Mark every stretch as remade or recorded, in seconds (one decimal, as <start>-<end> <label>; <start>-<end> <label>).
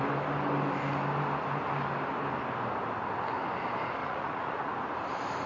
0.0-4.0 recorded; 4.0-4.7 remade; 4.7-5.5 recorded